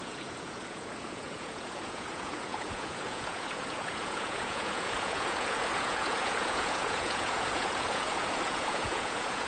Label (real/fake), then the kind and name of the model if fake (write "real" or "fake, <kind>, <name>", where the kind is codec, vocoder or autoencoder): fake, vocoder, Vocos